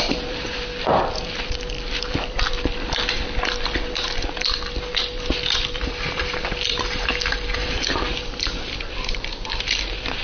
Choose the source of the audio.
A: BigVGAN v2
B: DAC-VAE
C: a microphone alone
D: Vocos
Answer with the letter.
A